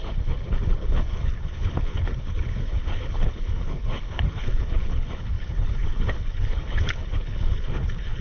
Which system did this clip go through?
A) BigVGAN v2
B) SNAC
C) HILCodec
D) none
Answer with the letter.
C